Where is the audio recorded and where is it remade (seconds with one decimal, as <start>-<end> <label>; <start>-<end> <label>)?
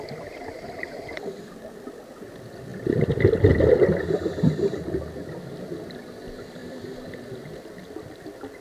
0.0-8.6 remade